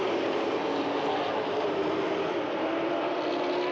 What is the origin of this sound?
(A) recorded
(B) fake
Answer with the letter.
A